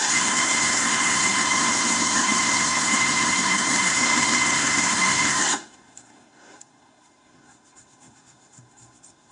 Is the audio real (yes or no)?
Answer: no